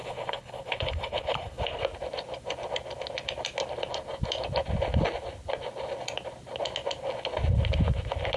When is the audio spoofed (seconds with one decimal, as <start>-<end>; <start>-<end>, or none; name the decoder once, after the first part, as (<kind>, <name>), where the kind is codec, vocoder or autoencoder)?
0.0-1.8 (codec, HILCodec)